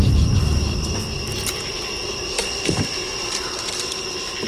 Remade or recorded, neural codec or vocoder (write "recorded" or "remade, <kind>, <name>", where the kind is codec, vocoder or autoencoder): recorded